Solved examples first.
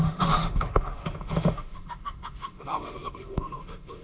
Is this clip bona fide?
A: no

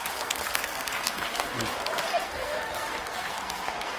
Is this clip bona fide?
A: no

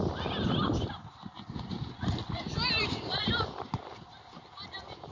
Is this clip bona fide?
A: no